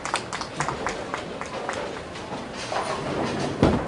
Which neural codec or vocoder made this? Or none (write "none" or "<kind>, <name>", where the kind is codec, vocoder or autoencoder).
none